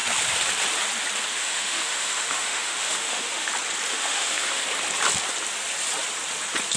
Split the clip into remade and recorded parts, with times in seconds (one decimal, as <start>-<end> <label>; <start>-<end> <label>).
0.0-1.3 recorded; 1.3-3.5 remade; 3.5-3.9 recorded; 3.9-4.6 remade; 4.6-6.8 recorded